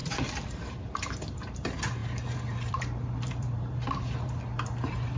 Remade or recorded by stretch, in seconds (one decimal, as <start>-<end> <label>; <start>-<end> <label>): 0.0-0.7 recorded; 0.7-5.2 remade